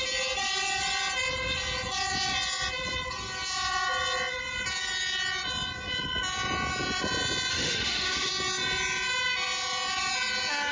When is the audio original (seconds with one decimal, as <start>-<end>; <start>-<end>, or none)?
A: 0.0-7.5; 8.3-10.7